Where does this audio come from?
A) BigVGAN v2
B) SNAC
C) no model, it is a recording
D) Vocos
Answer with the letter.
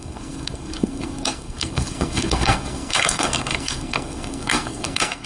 B